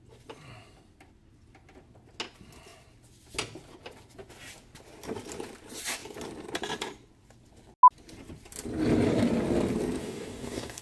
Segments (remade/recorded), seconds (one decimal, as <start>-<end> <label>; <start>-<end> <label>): 0.0-10.0 recorded; 10.0-10.8 remade